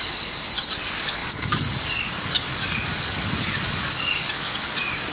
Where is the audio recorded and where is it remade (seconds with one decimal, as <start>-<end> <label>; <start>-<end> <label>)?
0.0-5.1 remade